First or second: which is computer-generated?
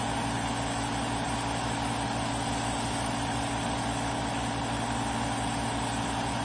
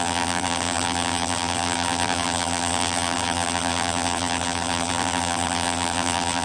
second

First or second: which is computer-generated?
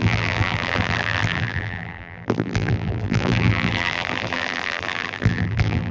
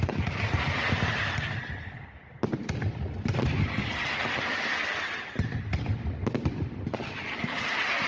first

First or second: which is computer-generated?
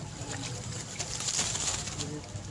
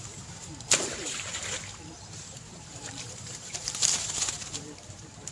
second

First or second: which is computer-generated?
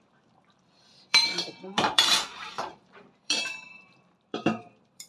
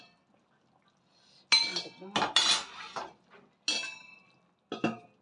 first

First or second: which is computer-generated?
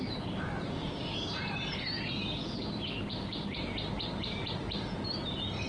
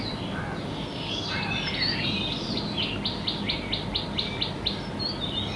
first